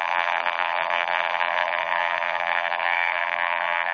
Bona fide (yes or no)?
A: no